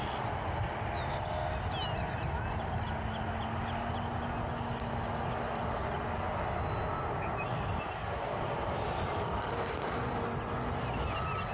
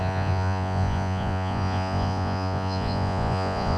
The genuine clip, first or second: first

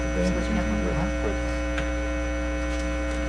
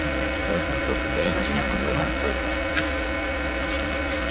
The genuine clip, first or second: first